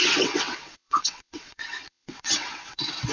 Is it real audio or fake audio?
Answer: fake